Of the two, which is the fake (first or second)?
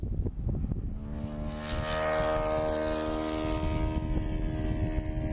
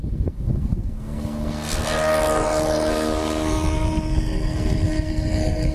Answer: second